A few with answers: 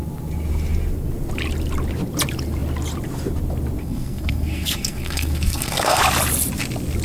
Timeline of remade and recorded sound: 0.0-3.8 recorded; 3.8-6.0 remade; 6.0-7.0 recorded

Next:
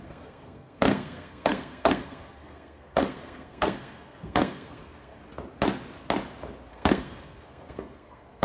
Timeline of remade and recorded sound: 0.0-5.2 remade; 5.2-6.7 recorded; 6.7-8.4 remade

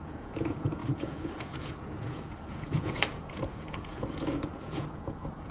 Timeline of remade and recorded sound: 0.0-5.5 remade

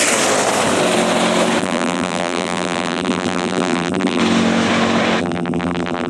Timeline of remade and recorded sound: 0.0-1.6 recorded; 1.6-4.2 remade; 4.2-5.2 recorded; 5.2-6.1 remade

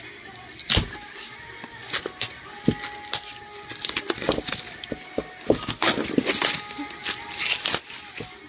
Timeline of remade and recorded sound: 0.0-8.5 recorded

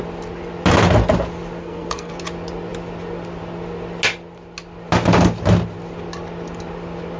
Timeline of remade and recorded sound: 0.0-1.6 recorded; 1.6-2.1 remade; 2.1-7.2 recorded